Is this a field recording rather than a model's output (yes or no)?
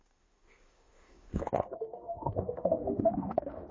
no